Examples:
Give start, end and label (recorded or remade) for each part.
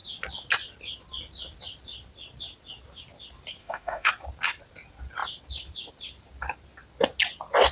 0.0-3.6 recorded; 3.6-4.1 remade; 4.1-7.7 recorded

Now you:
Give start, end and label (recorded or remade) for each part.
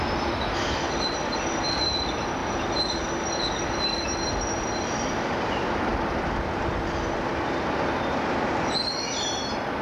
0.0-2.4 recorded; 2.4-3.0 remade; 3.0-9.8 recorded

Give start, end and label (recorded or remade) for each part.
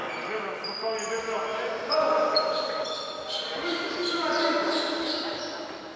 0.0-6.0 recorded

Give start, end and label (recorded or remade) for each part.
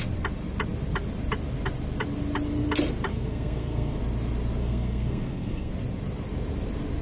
0.0-3.1 recorded; 3.1-4.0 remade; 4.0-4.6 recorded; 4.6-5.7 remade; 5.7-7.0 recorded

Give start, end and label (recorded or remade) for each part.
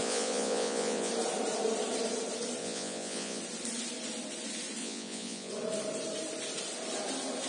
0.0-1.1 remade; 1.1-2.6 recorded; 2.6-3.4 remade; 3.4-4.8 recorded; 4.8-5.5 remade; 5.5-7.5 recorded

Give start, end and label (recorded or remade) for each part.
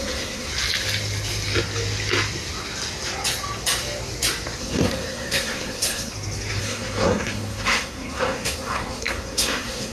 0.0-0.5 remade; 0.5-4.6 recorded; 4.6-6.1 remade; 6.1-6.6 recorded; 6.6-9.9 remade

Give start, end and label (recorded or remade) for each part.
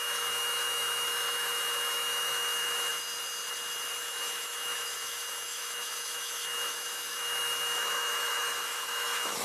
0.0-2.9 remade; 2.9-4.0 recorded; 4.0-9.4 remade